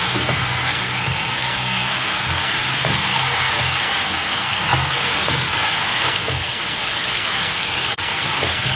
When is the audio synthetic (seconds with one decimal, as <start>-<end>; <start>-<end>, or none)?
0.0-8.8